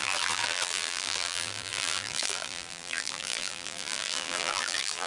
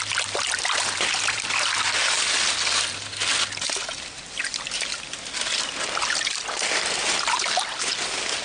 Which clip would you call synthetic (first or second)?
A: first